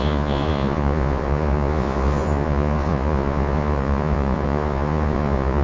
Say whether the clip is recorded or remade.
remade